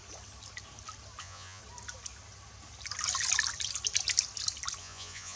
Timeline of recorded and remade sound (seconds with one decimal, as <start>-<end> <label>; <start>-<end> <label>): 0.0-1.2 recorded; 1.2-1.6 remade; 1.6-4.8 recorded; 4.8-5.4 remade